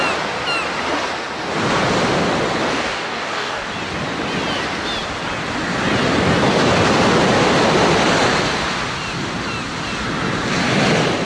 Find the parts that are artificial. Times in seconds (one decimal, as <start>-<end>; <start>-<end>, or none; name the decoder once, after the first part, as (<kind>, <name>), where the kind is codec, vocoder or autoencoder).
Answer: 2.7-3.7 (codec, DAC)